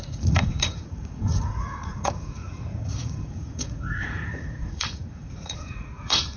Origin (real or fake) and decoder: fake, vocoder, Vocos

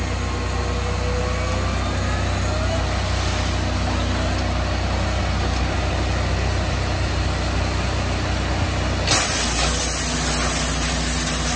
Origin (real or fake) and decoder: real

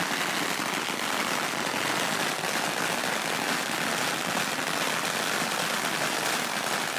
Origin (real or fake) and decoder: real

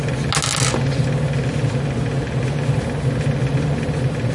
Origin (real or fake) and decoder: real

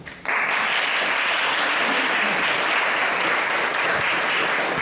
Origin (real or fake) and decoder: real